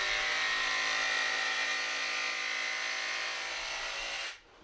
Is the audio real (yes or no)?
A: yes